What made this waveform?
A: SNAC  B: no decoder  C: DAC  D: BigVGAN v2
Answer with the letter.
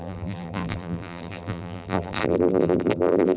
D